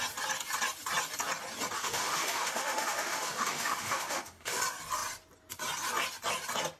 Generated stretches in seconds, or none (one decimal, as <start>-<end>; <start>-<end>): 1.8-4.6